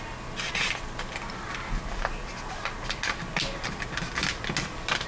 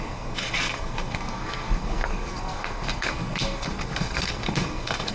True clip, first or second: first